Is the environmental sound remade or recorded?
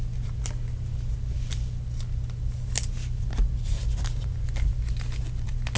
recorded